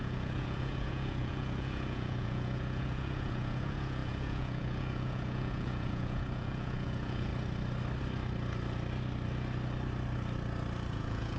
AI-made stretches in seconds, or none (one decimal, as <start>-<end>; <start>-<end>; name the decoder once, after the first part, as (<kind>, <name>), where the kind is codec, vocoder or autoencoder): 0.0-7.3 (vocoder, Vocos); 10.9-11.4